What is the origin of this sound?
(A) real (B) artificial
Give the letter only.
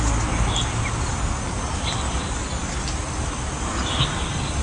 A